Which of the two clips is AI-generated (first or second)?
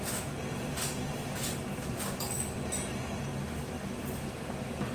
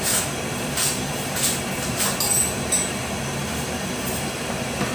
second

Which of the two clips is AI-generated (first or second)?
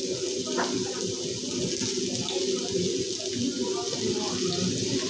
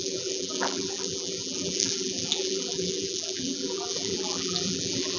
second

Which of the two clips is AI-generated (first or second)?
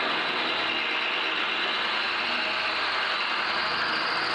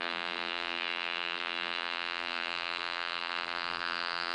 second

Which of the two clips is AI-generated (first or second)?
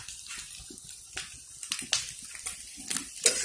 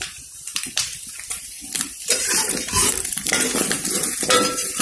second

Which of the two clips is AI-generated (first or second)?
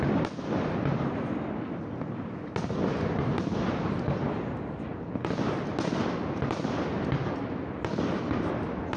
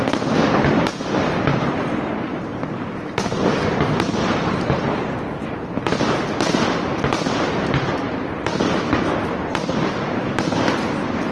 second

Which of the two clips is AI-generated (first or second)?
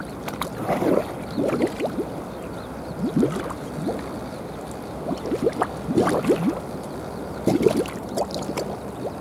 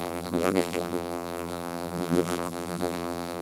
second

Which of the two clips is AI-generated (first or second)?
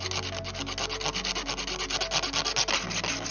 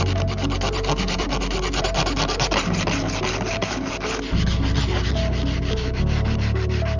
second